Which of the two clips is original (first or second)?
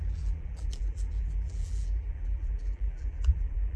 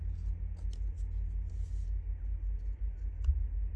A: second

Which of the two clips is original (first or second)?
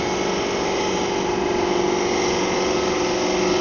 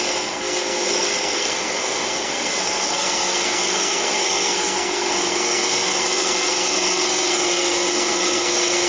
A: first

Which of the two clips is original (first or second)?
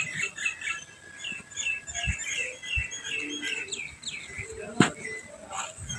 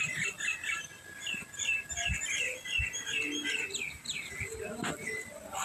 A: first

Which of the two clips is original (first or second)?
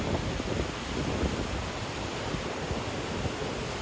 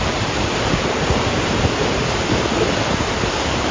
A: first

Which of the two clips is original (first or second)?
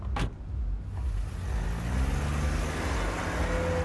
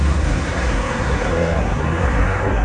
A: first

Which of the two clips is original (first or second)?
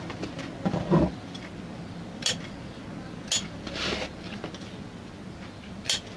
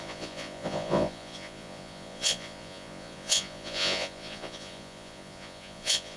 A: first